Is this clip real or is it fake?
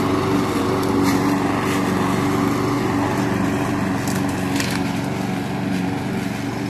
real